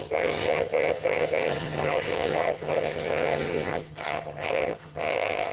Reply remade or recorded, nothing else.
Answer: remade